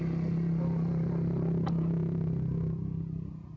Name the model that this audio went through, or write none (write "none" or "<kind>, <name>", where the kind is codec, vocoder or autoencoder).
none